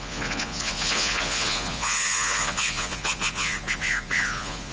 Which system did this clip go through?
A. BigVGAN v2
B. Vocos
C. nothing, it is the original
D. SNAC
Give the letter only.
B